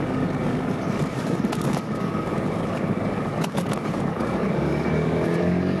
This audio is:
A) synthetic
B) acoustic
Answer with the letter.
A